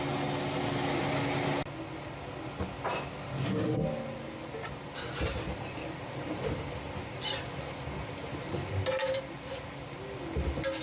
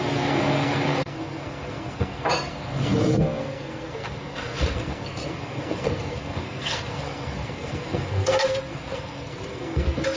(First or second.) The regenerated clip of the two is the second